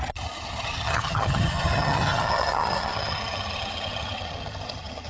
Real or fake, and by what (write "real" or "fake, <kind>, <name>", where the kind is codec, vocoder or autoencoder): fake, vocoder, HiFi-GAN